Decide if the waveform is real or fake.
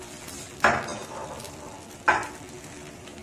real